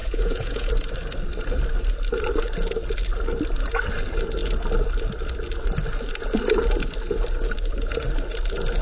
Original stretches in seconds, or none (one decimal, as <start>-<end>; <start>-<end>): 0.7-8.8